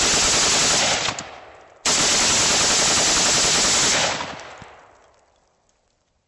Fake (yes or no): no